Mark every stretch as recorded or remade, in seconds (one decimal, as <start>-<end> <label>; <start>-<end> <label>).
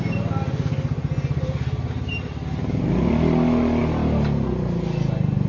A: 0.0-5.5 recorded